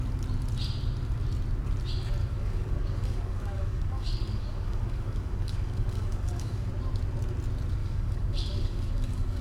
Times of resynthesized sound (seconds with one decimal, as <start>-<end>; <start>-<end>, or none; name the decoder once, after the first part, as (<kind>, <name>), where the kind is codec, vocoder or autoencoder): 2.2-6.7 (codec, DAC); 7.8-9.4